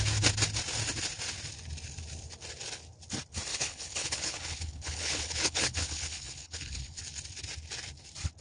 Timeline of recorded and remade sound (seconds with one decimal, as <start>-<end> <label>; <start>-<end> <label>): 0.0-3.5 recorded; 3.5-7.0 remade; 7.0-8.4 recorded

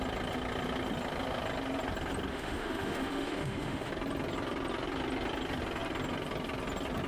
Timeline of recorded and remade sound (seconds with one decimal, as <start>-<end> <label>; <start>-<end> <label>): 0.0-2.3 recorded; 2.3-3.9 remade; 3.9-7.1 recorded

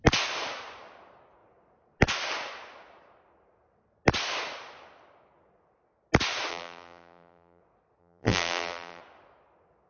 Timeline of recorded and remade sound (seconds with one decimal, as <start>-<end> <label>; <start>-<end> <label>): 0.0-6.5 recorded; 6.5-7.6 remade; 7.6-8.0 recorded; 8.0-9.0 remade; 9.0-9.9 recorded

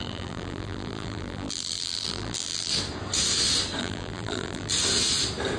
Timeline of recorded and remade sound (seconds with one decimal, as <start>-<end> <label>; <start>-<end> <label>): 0.0-2.7 remade; 2.7-3.8 recorded; 3.8-4.7 remade; 4.7-5.6 recorded

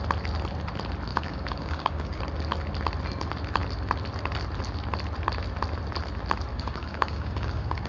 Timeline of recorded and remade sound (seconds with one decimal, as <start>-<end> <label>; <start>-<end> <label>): 0.0-1.1 recorded; 1.1-2.2 remade; 2.2-6.5 recorded; 6.5-7.9 remade

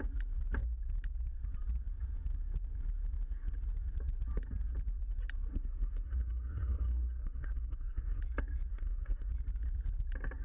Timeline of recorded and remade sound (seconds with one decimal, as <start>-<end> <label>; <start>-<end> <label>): 0.0-5.5 recorded; 5.5-8.2 remade; 8.2-8.7 recorded; 8.7-9.3 remade; 9.3-10.4 recorded